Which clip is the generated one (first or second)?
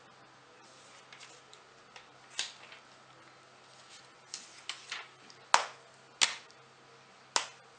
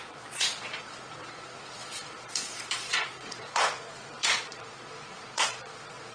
second